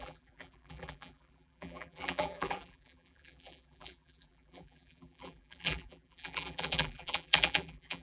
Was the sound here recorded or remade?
remade